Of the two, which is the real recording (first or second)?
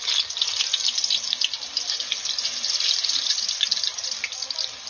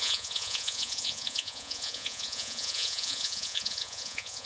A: first